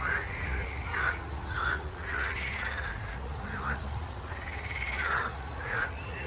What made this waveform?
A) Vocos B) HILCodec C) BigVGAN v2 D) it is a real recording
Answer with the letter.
A